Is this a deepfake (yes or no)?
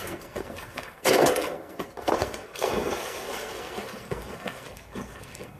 yes